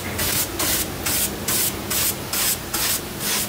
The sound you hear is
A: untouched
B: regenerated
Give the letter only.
A